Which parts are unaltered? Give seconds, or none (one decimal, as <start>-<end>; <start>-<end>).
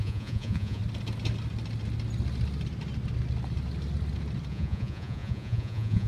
0.8-4.5